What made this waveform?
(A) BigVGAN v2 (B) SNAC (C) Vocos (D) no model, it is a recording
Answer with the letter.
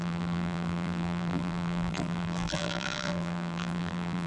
A